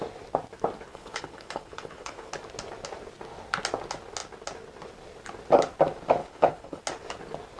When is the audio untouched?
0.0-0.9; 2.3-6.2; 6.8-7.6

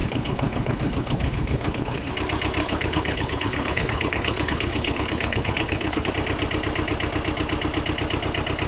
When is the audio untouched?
2.1-2.6; 6.1-8.7